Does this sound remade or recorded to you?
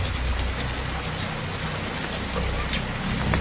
recorded